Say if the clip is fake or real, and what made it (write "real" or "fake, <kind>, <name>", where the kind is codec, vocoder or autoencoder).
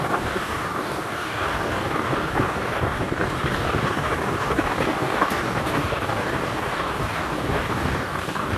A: fake, codec, DAC